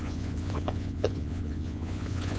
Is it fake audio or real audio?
fake